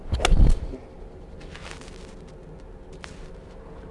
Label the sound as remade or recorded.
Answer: recorded